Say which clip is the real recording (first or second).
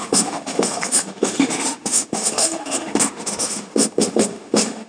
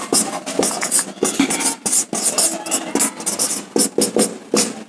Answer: second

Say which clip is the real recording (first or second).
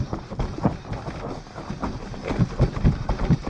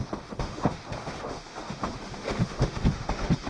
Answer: first